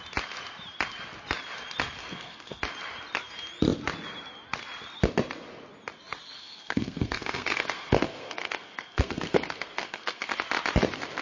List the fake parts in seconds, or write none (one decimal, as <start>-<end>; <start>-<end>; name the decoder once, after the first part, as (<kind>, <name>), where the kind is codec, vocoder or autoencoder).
2.0-2.6 (codec, SNAC); 6.4-10.3